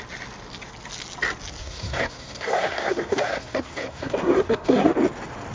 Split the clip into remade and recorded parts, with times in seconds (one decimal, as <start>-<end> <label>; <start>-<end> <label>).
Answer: 0.0-1.6 recorded; 1.6-4.9 remade; 4.9-5.5 recorded